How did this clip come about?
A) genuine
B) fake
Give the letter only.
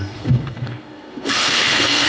B